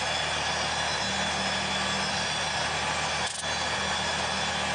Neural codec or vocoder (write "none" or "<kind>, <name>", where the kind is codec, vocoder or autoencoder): none